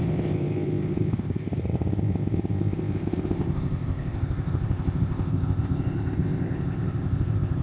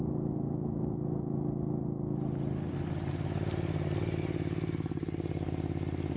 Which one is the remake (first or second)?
first